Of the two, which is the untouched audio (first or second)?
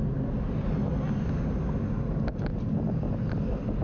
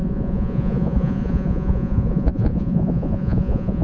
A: first